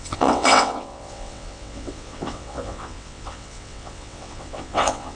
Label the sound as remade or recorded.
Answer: remade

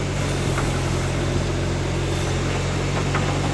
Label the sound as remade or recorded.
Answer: recorded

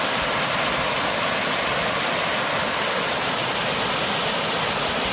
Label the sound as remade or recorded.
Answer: recorded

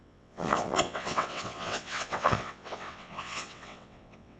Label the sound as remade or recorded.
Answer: remade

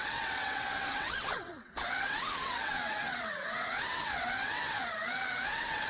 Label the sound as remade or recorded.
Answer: remade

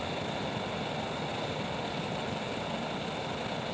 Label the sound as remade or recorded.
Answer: recorded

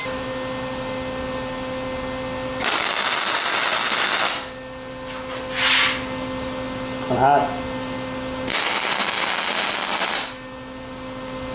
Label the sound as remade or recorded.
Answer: recorded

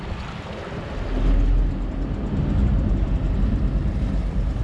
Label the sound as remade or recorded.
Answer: recorded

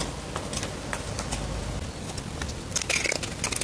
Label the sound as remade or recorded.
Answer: recorded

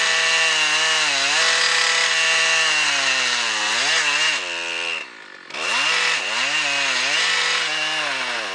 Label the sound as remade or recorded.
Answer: recorded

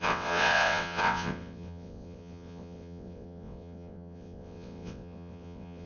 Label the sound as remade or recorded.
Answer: remade